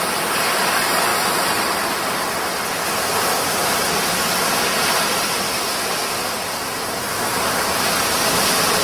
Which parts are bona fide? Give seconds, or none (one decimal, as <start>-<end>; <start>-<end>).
1.1-4.9; 6.0-8.8